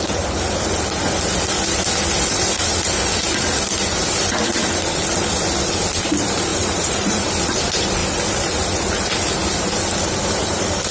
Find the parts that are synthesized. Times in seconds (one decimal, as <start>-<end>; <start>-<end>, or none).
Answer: 6.5-7.3